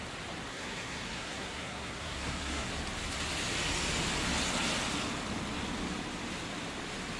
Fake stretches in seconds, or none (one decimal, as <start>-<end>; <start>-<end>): 0.5-2.7